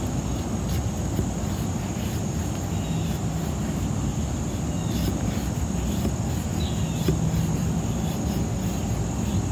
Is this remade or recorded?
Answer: recorded